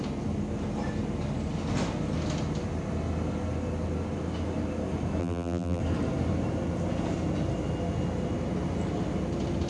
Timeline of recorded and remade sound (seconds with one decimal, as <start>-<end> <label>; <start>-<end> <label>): 0.0-5.2 recorded; 5.2-5.8 remade; 5.8-9.7 recorded